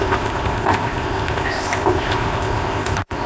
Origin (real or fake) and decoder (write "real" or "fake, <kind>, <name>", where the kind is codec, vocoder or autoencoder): fake, codec, ZipCodec